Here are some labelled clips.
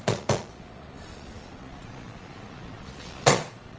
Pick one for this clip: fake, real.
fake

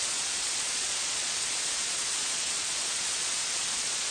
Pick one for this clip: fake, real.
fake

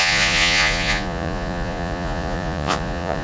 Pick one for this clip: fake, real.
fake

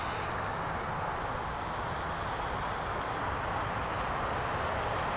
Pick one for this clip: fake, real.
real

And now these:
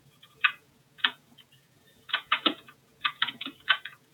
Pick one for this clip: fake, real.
fake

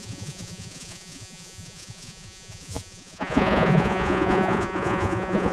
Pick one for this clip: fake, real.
fake